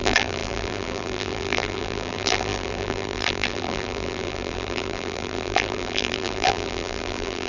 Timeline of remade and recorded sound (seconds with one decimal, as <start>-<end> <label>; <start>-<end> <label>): 0.0-7.5 remade